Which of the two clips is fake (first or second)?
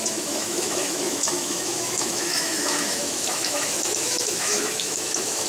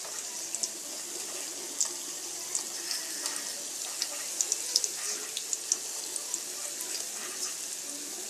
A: first